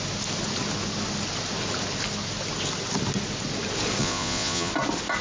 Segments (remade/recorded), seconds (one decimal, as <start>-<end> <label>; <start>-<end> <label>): 0.0-4.0 recorded; 4.0-4.7 remade; 4.7-5.2 recorded